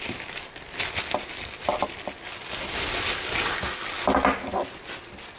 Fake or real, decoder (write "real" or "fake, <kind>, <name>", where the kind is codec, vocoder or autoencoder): real